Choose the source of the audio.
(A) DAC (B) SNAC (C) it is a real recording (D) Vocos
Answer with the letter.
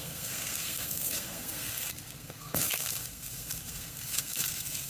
B